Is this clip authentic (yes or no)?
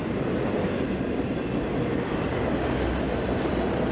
yes